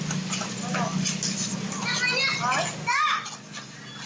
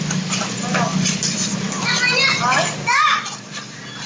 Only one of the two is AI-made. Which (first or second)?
second